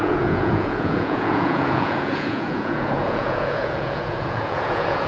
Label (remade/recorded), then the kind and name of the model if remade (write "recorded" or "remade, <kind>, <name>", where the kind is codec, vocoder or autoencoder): remade, vocoder, Vocos